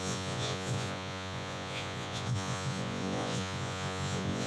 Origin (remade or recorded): remade